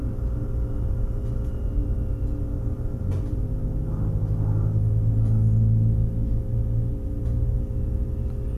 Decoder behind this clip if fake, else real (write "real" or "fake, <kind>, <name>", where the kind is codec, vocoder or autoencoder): real